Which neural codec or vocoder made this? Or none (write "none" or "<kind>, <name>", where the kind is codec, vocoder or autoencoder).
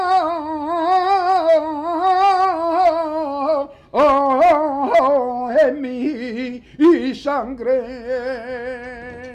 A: none